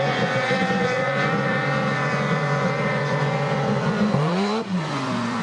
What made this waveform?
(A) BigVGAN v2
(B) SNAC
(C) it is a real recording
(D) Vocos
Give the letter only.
D